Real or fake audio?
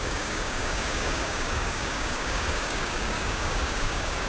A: fake